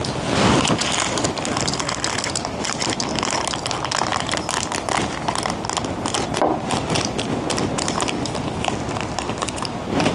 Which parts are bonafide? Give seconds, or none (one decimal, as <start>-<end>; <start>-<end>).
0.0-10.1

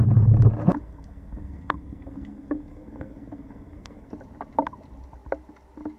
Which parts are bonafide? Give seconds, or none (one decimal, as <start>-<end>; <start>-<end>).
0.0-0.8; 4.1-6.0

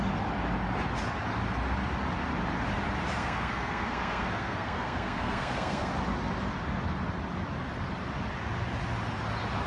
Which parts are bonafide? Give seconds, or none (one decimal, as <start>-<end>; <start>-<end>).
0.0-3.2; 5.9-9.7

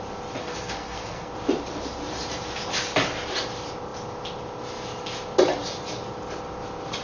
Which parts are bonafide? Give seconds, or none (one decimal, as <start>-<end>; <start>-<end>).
0.0-0.4; 1.3-7.0

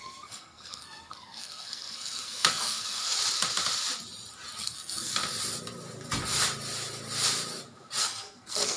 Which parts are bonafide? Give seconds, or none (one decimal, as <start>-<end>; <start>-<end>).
3.1-4.6; 5.1-8.0

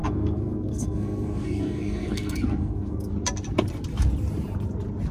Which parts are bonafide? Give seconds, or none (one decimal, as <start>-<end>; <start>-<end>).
3.1-5.1